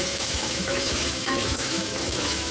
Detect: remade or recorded remade